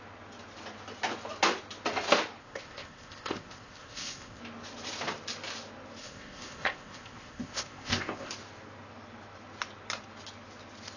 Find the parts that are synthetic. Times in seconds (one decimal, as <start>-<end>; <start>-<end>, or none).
2.4-4.4; 6.0-8.3